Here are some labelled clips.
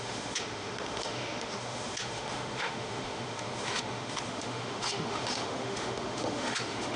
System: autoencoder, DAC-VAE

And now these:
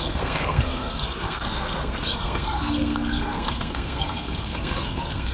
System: codec, SNAC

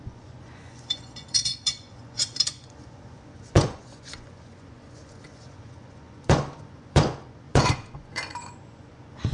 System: vocoder, Vocos